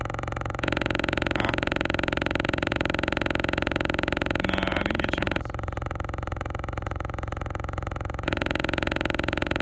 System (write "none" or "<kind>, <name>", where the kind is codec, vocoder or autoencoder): vocoder, Vocos